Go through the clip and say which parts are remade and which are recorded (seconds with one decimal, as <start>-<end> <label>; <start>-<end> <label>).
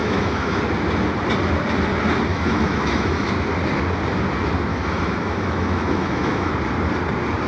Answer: 0.0-0.6 remade; 0.6-2.3 recorded; 2.3-3.3 remade; 3.3-4.7 recorded; 4.7-6.5 remade; 6.5-7.5 recorded